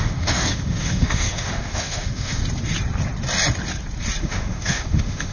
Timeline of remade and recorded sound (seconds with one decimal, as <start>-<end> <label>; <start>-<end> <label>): 0.0-2.4 remade; 2.4-4.2 recorded; 4.2-5.3 remade